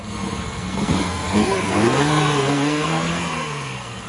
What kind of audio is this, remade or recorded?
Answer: remade